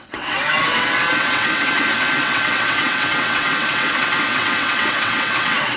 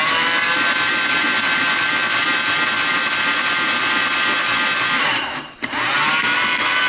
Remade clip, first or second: first